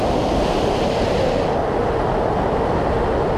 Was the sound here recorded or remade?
recorded